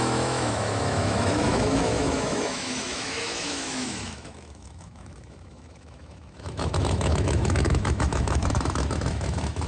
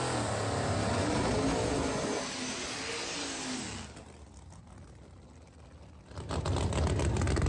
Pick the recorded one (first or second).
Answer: second